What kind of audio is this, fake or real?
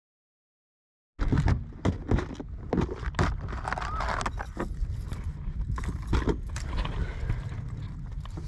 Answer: real